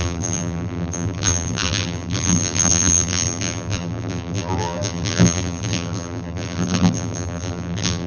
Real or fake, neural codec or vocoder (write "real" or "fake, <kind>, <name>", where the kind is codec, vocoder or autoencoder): fake, vocoder, BigVGAN v2